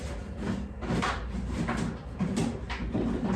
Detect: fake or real real